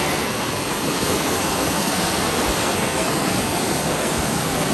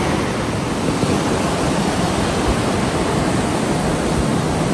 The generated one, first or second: first